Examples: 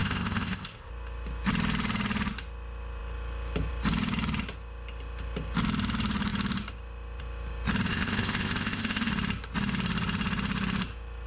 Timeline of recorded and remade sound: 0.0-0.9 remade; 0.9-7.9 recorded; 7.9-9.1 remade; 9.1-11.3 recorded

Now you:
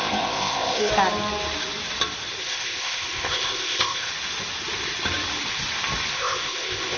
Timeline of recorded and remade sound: 0.0-0.9 remade; 0.9-2.4 recorded; 2.4-4.1 remade; 4.1-6.1 recorded; 6.1-7.0 remade

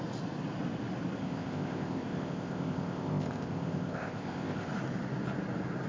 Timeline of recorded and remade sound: 0.0-1.2 recorded; 1.2-4.7 remade; 4.7-5.9 recorded

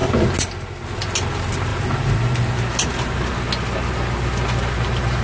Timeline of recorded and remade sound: 0.0-5.2 recorded

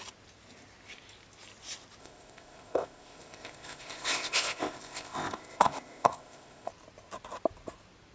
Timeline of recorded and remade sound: 0.0-2.0 recorded; 2.0-6.7 remade; 6.7-8.1 recorded

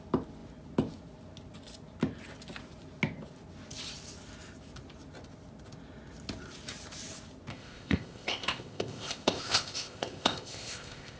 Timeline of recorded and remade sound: 0.0-7.5 recorded; 7.5-11.2 remade

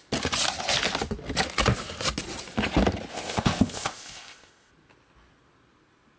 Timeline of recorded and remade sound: 0.0-3.1 recorded; 3.1-4.7 remade; 4.7-6.2 recorded

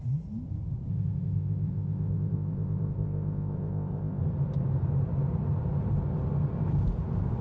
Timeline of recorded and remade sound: 0.0-0.9 recorded; 0.9-4.2 remade; 4.2-7.4 recorded